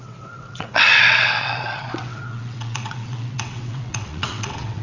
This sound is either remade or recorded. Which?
remade